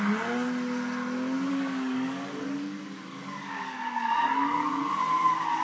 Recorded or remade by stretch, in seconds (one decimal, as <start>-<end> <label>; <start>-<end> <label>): 0.0-1.5 recorded; 1.5-4.9 remade; 4.9-5.6 recorded